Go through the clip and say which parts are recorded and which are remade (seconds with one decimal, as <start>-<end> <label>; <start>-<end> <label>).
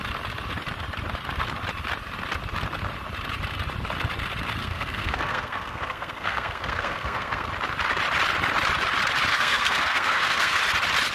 0.0-4.6 recorded; 4.6-7.5 remade; 7.5-9.3 recorded; 9.3-10.6 remade; 10.6-11.1 recorded